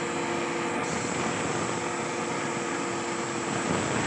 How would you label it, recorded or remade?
recorded